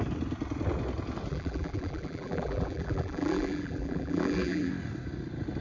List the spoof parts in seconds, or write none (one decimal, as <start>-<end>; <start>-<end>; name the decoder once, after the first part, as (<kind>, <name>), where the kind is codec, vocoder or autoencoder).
1.3-4.7 (vocoder, BigVGAN v2)